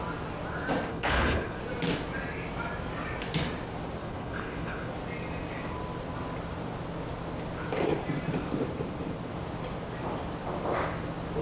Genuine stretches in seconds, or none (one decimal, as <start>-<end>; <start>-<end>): 0.0-0.9; 1.6-4.0; 4.9-11.4

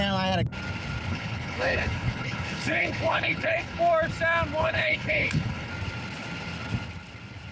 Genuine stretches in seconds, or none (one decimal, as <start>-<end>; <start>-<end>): 0.0-1.1; 3.8-4.6; 5.7-7.5